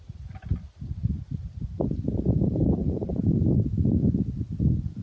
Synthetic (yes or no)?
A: no